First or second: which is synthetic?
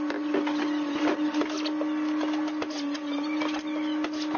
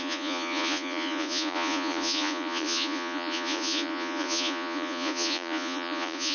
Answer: second